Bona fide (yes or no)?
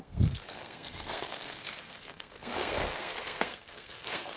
no